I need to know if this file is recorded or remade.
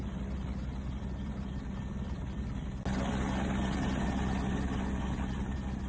recorded